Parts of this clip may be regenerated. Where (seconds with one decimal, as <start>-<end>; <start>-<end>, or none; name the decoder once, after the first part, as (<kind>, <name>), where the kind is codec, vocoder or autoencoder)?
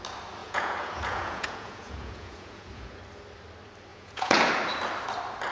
0.4-3.0 (vocoder, Vocos); 3.9-4.5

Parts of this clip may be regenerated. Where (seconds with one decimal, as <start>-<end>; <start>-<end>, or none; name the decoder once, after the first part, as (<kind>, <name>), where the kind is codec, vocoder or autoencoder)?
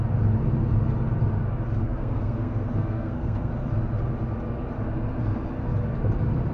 1.8-3.5 (codec, SNAC)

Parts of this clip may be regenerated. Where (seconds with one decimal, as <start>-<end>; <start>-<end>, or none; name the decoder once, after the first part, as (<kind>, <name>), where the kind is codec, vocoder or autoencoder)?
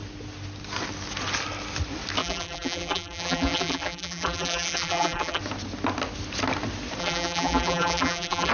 2.2-5.4 (vocoder, BigVGAN v2); 7.0-8.5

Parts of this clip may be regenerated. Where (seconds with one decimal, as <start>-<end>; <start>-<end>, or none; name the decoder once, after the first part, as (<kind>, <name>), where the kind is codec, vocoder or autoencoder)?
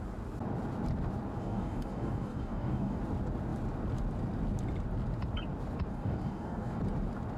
1.4-3.0 (codec, DAC); 5.9-6.8